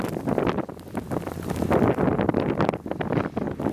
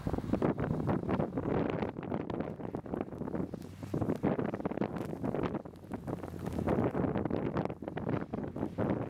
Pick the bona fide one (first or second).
second